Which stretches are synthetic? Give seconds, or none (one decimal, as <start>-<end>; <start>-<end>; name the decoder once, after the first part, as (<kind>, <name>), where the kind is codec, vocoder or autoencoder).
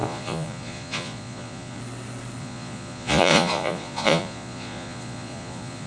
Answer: 0.0-1.8 (vocoder, Vocos); 2.4-5.9